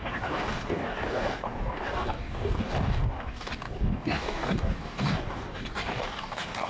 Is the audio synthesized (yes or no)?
yes